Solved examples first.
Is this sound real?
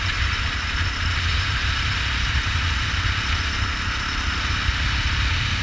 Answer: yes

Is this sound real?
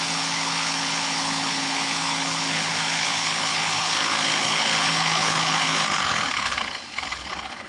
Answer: no